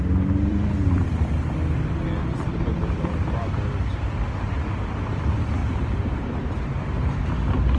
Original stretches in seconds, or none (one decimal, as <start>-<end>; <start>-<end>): 0.0-0.5; 1.1-2.2; 3.1-5.6; 6.5-7.8